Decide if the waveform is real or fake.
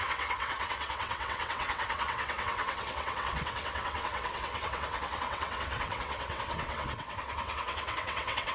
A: fake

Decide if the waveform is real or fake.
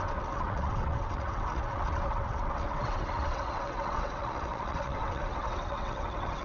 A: fake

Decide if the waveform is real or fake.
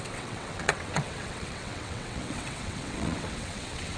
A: fake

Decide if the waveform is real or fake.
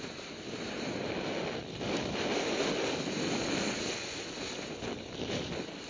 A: real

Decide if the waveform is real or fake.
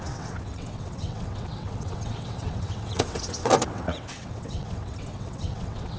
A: fake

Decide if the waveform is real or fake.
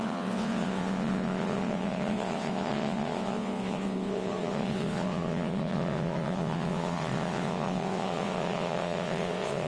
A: fake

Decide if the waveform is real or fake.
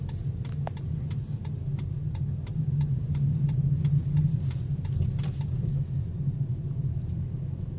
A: real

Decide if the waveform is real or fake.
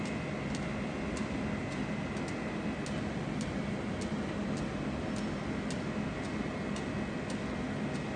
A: real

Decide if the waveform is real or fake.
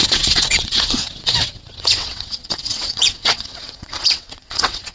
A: fake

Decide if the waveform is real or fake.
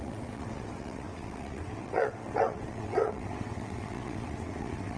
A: fake